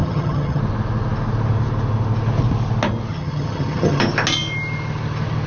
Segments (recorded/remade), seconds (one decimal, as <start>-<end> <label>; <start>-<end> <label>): 0.0-0.6 remade; 0.6-3.1 recorded; 3.1-4.0 remade; 4.0-5.5 recorded